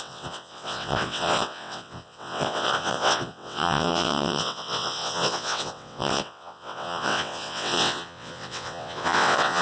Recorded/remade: remade